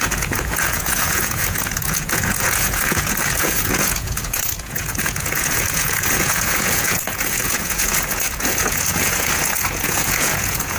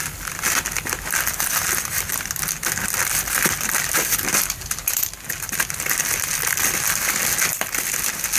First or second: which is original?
second